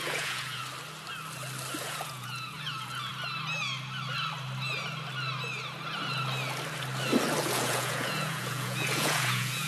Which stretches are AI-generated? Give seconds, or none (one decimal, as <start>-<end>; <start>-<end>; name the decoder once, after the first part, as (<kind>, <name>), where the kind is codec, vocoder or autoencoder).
0.0-0.6 (vocoder, Vocos); 1.8-3.1; 7.4-9.7